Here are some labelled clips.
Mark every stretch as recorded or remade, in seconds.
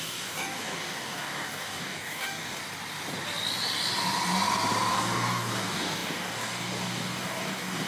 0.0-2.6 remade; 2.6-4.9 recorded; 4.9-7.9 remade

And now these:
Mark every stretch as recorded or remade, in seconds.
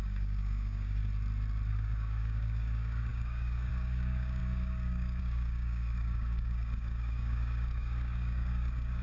0.0-1.0 remade; 1.0-1.7 recorded; 1.7-9.0 remade